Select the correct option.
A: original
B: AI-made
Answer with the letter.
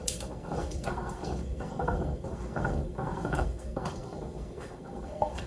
B